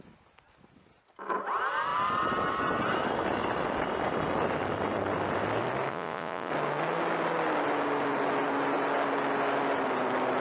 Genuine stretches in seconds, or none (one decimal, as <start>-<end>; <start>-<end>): 0.0-5.9; 6.5-10.4